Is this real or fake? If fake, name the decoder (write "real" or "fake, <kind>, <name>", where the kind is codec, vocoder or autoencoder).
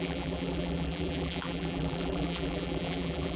fake, vocoder, BigVGAN v2